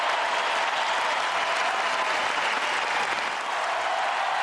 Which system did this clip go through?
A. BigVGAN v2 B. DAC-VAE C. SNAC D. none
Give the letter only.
D